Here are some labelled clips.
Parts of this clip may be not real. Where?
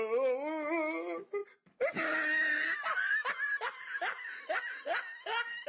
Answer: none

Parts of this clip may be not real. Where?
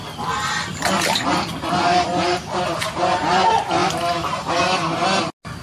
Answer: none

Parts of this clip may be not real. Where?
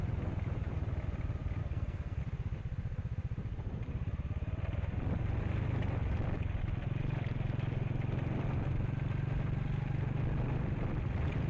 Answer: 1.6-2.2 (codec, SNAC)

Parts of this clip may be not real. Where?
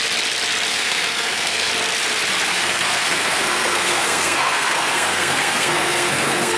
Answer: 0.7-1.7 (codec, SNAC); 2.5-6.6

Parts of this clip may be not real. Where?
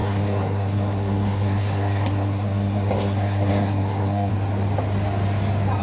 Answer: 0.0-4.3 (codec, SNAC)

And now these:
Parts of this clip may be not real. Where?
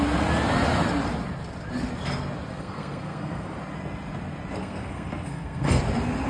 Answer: 2.5-3.6 (codec, SNAC); 4.6-5.8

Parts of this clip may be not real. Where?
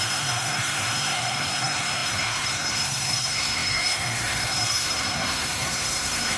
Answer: 0.0-6.4 (codec, SNAC)